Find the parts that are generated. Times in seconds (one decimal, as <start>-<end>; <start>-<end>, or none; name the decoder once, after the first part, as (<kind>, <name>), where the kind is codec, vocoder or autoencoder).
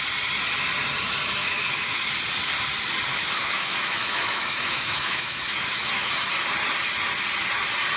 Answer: 1.4-2.1 (autoencoder, DAC-VAE); 3.1-6.1